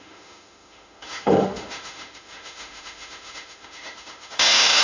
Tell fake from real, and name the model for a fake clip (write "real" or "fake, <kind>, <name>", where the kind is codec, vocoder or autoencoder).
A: fake, autoencoder, DAC-VAE